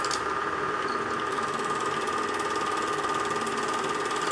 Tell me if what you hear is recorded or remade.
recorded